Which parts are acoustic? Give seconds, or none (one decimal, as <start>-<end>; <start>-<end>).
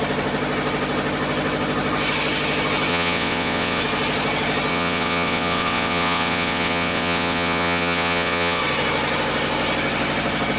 0.0-2.9; 3.8-4.7; 8.6-10.6